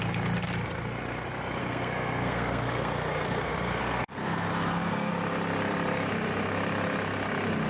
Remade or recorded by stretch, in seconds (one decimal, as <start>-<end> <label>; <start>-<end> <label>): 0.0-1.6 recorded; 1.6-5.1 remade; 5.1-7.7 recorded